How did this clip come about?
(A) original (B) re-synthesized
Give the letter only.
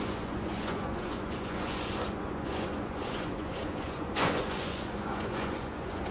B